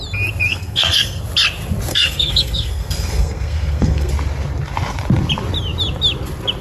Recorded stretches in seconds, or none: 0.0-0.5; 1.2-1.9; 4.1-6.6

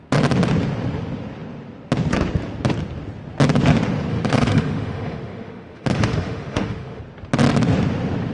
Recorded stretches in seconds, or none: 0.0-4.1; 7.0-8.3